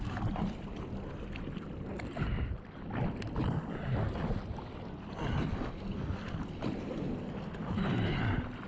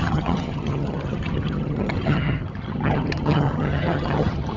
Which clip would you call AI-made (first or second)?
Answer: second